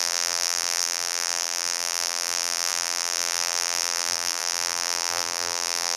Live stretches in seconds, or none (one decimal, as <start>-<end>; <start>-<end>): none